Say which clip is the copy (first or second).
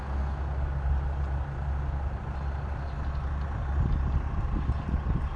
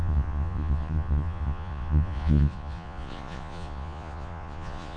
second